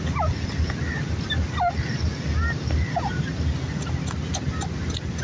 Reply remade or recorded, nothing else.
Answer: recorded